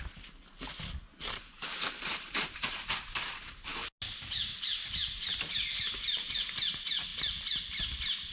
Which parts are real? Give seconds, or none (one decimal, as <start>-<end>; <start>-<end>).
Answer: 0.0-1.1; 3.3-5.5; 6.3-8.3